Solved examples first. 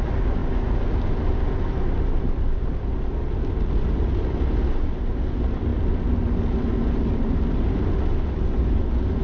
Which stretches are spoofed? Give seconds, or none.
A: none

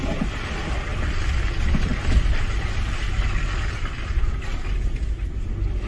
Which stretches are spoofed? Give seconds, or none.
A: none

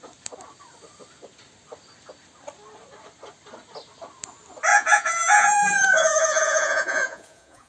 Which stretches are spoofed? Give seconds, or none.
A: 4.7-7.7 (vocoder, Vocos)

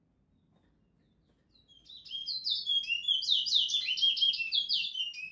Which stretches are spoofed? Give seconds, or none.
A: none

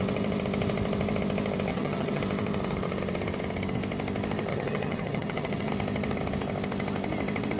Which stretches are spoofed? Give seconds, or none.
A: 1.7-2.2 (vocoder, HiFi-GAN); 4.5-5.7

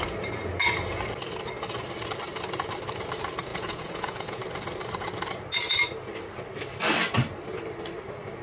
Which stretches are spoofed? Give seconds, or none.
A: 3.5-4.4 (vocoder, Vocos)

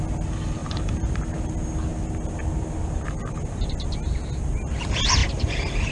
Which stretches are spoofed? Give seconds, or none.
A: 0.6-1.5 (vocoder, BigVGAN v2); 5.2-5.9

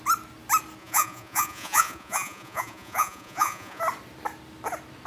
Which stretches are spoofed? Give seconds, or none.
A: 0.8-3.8 (vocoder, Vocos)